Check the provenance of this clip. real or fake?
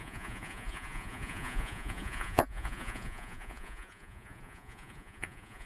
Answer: fake